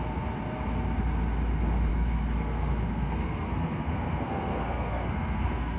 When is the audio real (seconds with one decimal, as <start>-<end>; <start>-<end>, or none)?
0.0-1.9